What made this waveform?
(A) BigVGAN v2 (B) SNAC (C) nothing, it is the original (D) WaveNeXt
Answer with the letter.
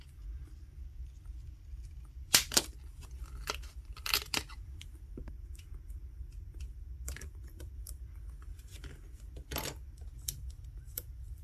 A